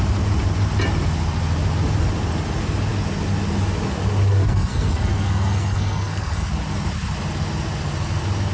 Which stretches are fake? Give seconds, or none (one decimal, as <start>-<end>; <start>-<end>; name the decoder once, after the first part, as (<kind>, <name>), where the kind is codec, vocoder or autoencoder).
4.3-6.5 (codec, SNAC)